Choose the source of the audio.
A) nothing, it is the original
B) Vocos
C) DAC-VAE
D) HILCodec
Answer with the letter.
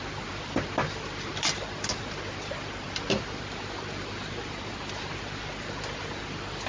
A